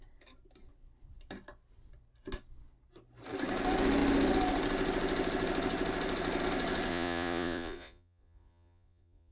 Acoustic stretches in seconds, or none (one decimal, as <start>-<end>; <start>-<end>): 0.0-6.9